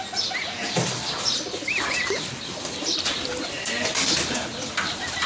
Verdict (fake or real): real